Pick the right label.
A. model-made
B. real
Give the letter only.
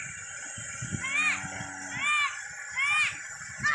B